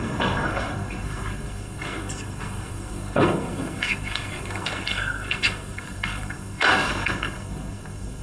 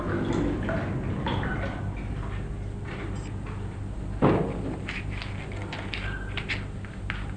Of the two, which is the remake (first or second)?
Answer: first